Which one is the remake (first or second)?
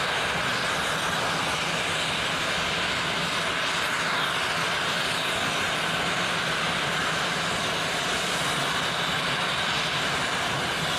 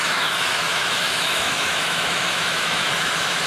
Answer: second